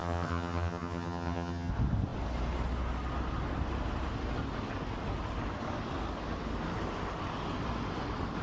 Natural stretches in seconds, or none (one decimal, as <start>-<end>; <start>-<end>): 1.7-8.4